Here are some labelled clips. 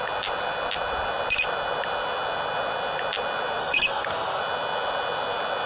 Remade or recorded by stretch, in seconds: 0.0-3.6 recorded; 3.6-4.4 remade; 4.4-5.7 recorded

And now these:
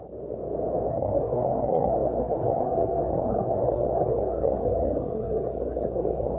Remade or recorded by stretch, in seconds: 0.0-0.9 recorded; 0.9-6.4 remade

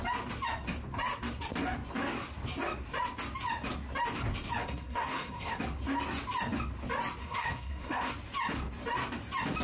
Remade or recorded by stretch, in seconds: 0.0-4.6 recorded; 4.6-5.6 remade; 5.6-7.2 recorded; 7.2-8.1 remade; 8.1-9.6 recorded

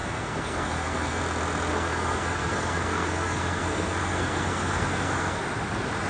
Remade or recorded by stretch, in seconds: 0.0-1.2 remade; 1.2-1.7 recorded; 1.7-5.4 remade; 5.4-6.1 recorded

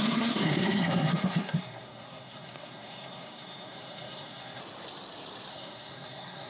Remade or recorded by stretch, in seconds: 0.0-4.6 remade; 4.6-5.5 recorded; 5.5-6.5 remade